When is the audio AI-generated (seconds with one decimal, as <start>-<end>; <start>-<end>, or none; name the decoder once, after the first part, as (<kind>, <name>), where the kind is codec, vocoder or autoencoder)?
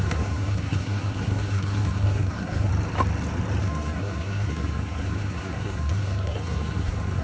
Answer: 0.0-2.7 (codec, SNAC); 3.6-7.2